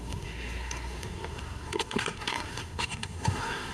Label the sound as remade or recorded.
remade